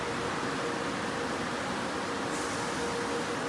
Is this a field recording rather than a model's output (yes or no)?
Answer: yes